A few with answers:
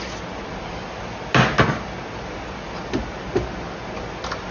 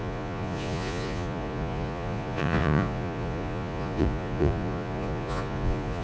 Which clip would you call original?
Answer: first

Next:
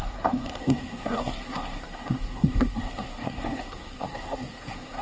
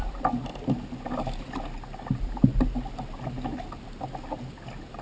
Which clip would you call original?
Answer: second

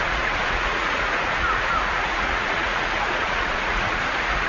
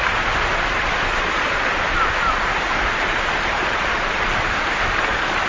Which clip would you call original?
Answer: second